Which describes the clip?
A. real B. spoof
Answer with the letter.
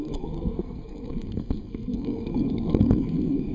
B